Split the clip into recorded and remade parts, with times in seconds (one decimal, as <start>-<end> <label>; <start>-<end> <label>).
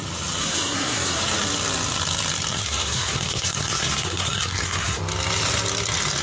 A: 0.0-0.4 recorded; 0.4-1.2 remade; 1.2-2.5 recorded; 2.5-5.0 remade; 5.0-6.2 recorded